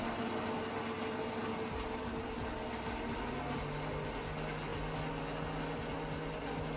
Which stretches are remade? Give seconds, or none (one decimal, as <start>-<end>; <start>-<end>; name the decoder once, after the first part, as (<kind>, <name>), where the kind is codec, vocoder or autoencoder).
none